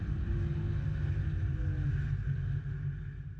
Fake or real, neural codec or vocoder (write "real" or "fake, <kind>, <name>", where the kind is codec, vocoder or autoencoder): real